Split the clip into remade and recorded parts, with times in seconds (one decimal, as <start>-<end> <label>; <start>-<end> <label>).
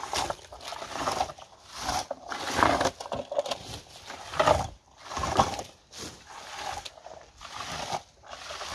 0.0-8.7 recorded